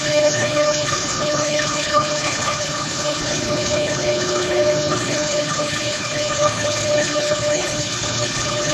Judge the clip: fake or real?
fake